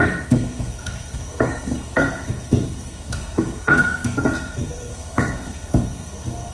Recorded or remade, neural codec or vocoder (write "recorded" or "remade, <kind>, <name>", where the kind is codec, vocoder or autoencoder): remade, codec, SNAC